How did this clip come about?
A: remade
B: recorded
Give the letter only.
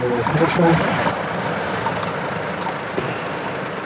B